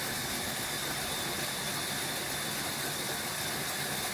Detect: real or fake real